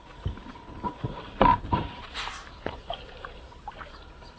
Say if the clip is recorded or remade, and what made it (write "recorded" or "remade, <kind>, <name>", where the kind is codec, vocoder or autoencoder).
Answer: remade, vocoder, BigVGAN v2